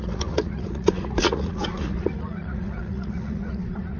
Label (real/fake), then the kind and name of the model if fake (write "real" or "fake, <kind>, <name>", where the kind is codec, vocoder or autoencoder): fake, vocoder, Vocos